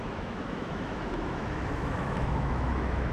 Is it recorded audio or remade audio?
remade